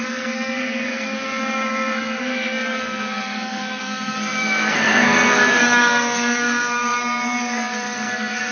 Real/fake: fake